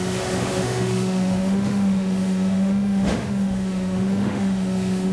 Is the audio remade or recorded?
remade